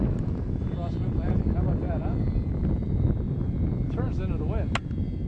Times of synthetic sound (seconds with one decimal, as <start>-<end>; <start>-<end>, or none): none